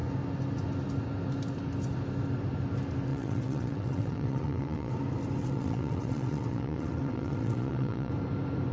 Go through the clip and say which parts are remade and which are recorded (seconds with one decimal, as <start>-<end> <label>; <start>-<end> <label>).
0.0-3.1 recorded; 3.1-4.9 remade; 4.9-5.4 recorded; 5.4-8.1 remade; 8.1-8.7 recorded

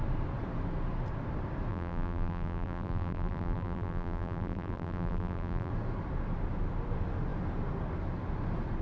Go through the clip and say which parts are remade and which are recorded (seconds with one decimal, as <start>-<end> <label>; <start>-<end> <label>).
0.0-1.7 recorded; 1.7-5.7 remade; 5.7-8.8 recorded